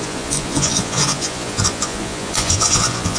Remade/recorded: remade